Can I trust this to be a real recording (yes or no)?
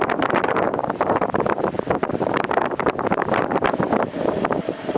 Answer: no